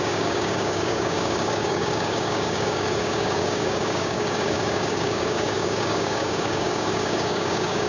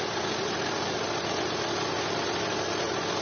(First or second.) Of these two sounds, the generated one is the first